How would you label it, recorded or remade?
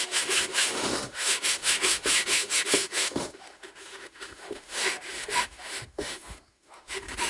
remade